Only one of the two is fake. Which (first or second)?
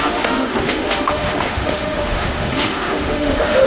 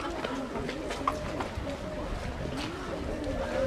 first